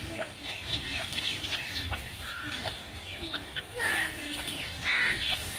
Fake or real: fake